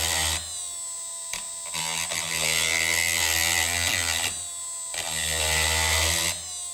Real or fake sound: real